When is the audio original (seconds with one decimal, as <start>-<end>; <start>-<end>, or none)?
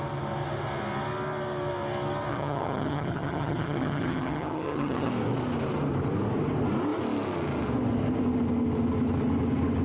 0.0-2.3; 5.1-9.8